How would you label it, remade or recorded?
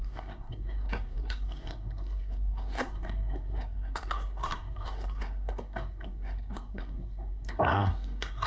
remade